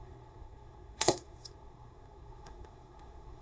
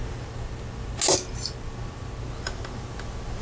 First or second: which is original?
second